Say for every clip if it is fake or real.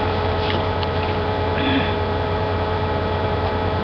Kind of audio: fake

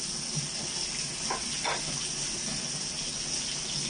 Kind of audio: real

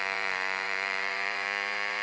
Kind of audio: fake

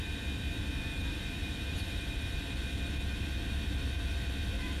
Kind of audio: fake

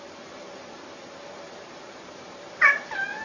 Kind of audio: fake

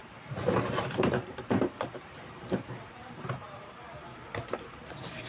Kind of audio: fake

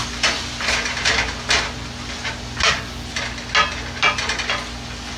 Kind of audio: real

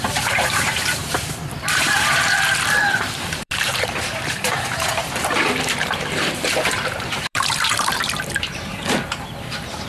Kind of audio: fake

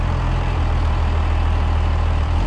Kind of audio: fake